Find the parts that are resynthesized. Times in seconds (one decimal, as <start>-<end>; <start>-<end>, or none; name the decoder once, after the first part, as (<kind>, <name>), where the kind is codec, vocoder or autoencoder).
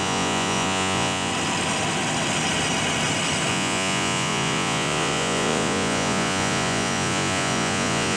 0.0-1.3 (vocoder, Vocos); 3.5-8.2